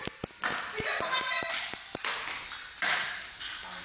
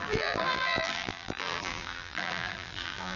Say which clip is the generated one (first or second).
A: second